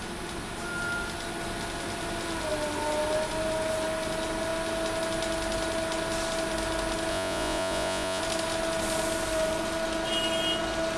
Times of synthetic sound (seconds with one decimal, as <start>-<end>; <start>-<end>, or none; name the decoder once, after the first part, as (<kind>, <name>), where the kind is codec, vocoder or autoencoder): 7.1-8.2 (vocoder, Vocos)